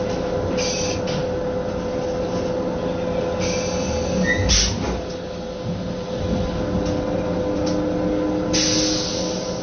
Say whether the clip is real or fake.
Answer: real